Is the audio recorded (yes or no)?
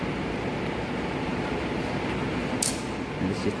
yes